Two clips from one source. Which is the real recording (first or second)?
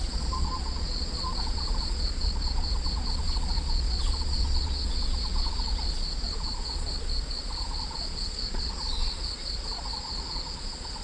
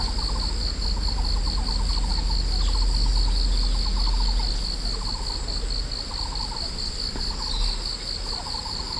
second